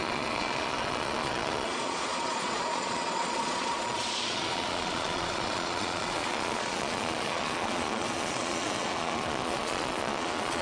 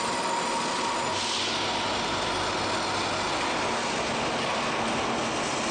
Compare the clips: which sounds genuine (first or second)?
second